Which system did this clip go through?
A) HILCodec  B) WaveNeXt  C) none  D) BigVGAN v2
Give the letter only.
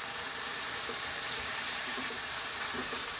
D